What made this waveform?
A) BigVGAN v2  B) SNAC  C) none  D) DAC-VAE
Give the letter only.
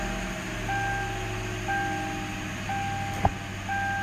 C